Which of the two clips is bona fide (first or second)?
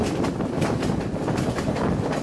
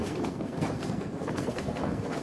first